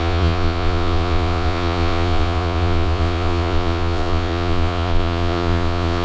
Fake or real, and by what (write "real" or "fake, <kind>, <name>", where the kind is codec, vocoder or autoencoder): fake, vocoder, Vocos